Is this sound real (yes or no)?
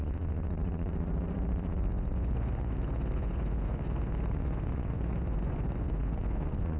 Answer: no